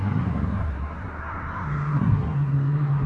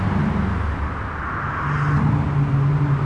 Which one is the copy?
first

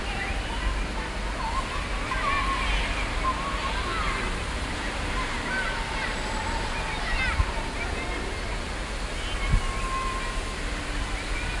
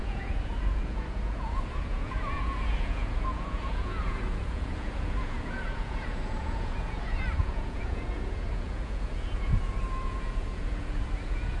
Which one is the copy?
second